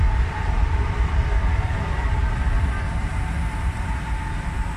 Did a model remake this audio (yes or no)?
yes